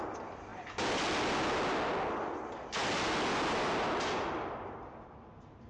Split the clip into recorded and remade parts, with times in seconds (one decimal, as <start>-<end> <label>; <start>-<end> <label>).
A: 0.0-5.7 recorded